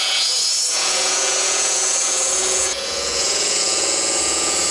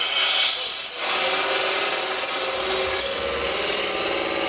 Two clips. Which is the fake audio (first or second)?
first